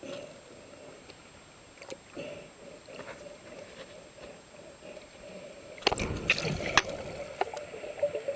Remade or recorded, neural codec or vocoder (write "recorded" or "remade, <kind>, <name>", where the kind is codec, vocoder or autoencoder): recorded